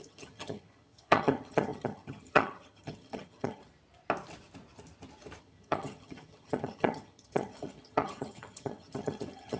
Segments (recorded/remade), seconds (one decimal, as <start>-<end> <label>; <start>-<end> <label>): 0.0-3.6 remade; 3.6-5.4 recorded; 5.4-9.6 remade

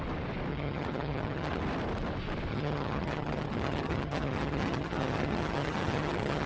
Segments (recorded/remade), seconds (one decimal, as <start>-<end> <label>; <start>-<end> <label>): 0.0-0.5 recorded; 0.5-1.6 remade; 1.6-2.5 recorded; 2.5-6.5 remade

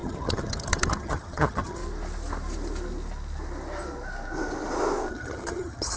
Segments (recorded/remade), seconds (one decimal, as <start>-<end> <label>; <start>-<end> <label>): 0.0-1.8 remade; 1.8-5.1 recorded; 5.1-6.0 remade

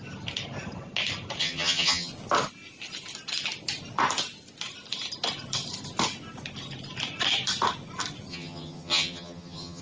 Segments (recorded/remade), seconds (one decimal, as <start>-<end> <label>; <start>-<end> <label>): 0.0-1.4 recorded; 1.4-2.1 remade; 2.1-8.3 recorded; 8.3-9.8 remade

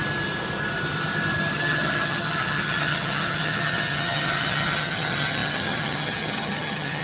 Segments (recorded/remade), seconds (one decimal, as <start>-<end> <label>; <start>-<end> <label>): 0.0-1.5 recorded; 1.5-7.0 remade